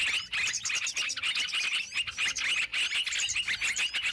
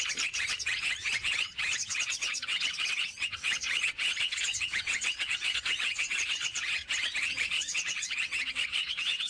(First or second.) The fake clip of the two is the second